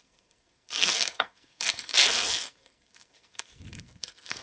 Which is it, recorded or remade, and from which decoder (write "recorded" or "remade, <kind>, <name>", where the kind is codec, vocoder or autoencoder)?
remade, codec, SNAC